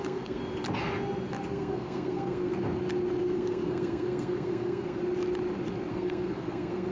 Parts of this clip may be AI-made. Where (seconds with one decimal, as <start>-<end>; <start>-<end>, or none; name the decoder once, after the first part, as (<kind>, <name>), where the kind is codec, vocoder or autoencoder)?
0.0-0.4 (codec, SNAC); 1.5-2.5; 3.2-5.0; 5.9-6.9

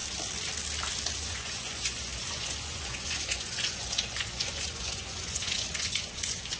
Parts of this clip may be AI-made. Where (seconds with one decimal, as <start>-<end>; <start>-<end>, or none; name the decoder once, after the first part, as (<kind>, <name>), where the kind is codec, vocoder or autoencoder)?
1.1-6.6 (vocoder, Vocos)